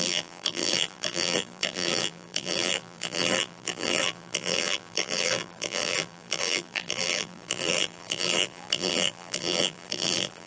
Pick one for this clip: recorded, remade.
remade